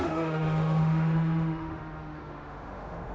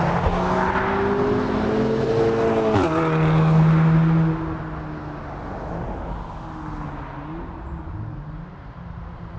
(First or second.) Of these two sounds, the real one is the second